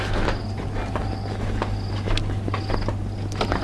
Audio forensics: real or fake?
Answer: real